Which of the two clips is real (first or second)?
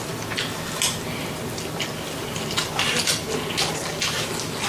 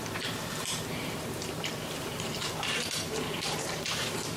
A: first